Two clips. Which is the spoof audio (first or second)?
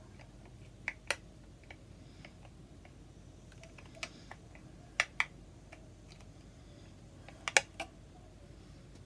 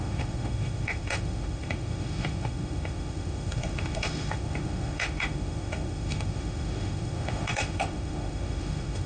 second